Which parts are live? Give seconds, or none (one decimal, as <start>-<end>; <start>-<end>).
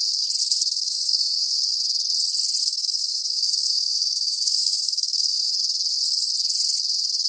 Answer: 0.0-0.4; 1.4-2.6; 5.5-7.3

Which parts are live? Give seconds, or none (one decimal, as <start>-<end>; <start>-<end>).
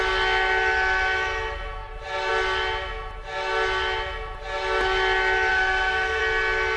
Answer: 0.0-5.5; 6.2-6.8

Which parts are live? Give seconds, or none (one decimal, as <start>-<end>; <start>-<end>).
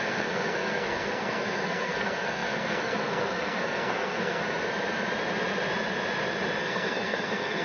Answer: 4.4-6.6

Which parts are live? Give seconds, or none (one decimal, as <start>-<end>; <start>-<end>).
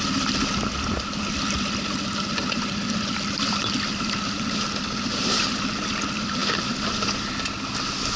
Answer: 0.0-8.2